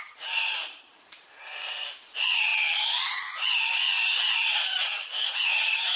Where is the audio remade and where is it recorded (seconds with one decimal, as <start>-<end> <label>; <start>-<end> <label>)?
0.0-6.0 remade